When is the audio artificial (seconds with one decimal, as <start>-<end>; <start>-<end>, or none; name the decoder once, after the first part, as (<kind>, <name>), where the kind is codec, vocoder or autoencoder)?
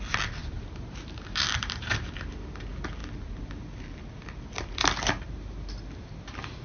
0.4-2.3 (vocoder, BigVGAN v2)